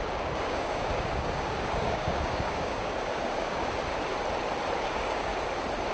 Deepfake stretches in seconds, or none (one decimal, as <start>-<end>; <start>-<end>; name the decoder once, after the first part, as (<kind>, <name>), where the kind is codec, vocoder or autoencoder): 0.0-3.6 (codec, DAC); 4.8-5.3